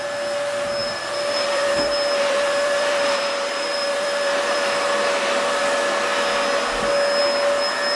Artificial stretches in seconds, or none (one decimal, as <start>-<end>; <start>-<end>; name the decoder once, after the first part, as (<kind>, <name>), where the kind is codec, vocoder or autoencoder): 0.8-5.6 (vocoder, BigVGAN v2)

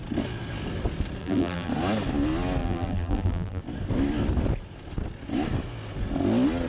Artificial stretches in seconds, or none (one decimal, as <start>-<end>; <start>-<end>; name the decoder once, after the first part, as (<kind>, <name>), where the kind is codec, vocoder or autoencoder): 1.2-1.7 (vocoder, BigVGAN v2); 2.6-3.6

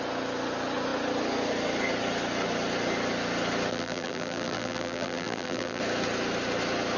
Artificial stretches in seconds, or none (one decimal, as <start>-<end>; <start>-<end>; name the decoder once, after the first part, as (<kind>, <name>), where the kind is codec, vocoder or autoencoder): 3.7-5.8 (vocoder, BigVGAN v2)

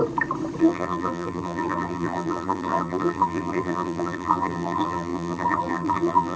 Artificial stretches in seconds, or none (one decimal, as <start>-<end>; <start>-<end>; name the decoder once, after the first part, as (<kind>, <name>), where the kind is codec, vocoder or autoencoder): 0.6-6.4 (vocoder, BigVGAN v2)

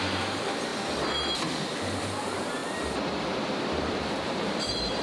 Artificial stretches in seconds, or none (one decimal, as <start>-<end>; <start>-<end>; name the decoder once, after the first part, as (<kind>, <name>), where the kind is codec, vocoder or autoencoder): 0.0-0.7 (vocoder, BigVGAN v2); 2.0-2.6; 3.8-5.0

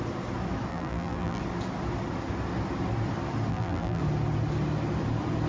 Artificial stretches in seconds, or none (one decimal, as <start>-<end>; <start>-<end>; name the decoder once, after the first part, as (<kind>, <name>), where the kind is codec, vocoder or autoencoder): 0.7-1.4 (vocoder, BigVGAN v2); 3.5-4.0